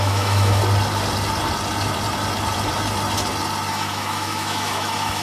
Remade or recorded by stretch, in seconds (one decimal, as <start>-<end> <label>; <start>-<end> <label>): 0.0-0.6 remade; 0.6-3.7 recorded; 3.7-5.2 remade